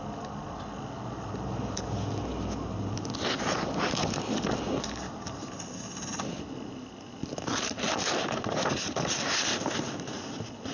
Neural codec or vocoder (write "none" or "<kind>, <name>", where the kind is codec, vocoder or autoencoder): none